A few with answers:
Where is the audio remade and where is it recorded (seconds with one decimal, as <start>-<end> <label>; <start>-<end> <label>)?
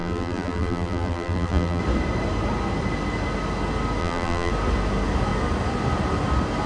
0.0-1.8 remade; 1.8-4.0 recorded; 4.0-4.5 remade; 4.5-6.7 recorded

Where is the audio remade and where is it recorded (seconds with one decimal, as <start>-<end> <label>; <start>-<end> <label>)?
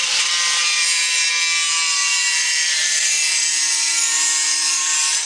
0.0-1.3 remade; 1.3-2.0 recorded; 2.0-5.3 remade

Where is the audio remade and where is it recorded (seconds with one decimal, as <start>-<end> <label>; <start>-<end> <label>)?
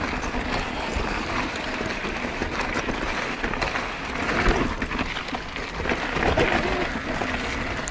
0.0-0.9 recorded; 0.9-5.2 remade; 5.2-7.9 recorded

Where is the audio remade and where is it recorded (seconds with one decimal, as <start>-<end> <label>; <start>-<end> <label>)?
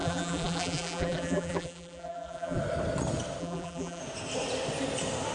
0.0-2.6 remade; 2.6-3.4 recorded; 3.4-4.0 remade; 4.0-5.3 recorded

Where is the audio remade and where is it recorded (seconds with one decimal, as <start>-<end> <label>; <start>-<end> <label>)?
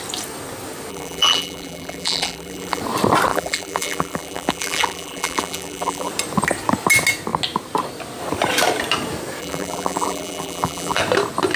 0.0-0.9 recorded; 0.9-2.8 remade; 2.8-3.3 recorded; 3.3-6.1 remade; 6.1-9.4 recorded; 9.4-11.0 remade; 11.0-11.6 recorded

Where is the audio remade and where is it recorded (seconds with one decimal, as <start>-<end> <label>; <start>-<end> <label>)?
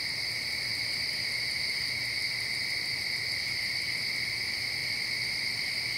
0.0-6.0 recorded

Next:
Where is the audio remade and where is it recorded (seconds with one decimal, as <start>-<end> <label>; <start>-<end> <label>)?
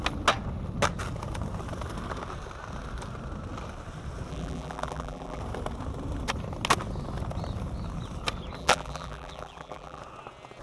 0.0-4.3 recorded; 4.3-5.4 remade; 5.4-8.6 recorded; 8.6-10.0 remade; 10.0-10.6 recorded